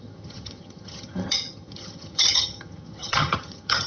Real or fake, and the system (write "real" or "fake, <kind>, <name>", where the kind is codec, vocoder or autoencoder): fake, vocoder, HiFi-GAN